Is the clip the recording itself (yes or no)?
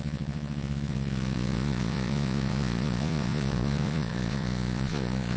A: no